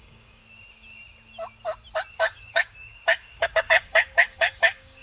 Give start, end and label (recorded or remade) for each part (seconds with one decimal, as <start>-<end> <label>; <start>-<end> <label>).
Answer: 0.0-0.4 remade; 0.4-2.1 recorded; 2.1-5.0 remade